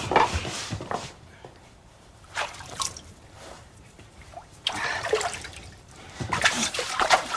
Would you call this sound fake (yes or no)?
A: yes